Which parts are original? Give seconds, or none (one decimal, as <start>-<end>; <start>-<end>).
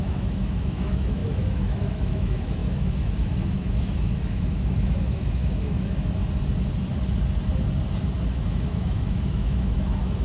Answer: 6.2-8.3